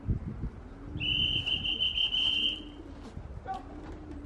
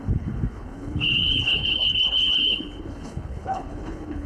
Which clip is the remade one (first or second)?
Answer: second